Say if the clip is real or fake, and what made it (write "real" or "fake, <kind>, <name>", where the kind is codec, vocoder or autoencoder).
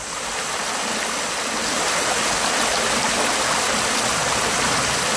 real